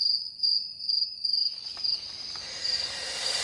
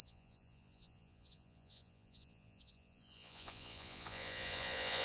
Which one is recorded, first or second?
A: first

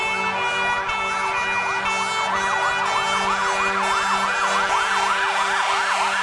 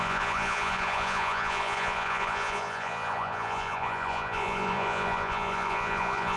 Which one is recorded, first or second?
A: first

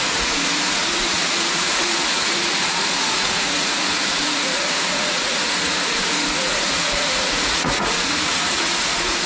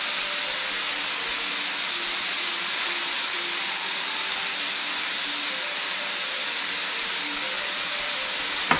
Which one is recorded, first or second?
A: second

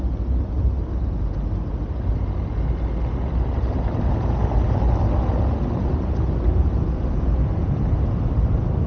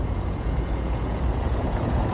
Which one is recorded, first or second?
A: first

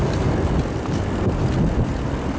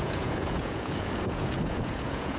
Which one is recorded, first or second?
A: first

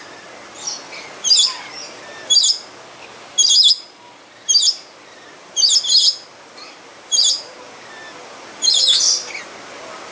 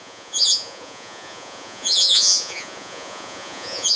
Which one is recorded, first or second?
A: first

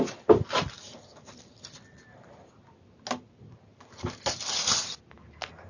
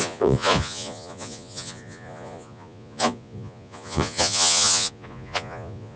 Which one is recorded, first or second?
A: first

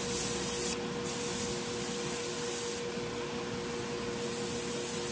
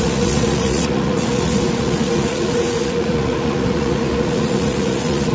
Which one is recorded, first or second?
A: first